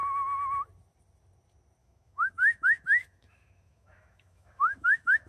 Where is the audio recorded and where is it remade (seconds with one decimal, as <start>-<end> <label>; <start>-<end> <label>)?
0.0-1.8 recorded; 1.8-5.3 remade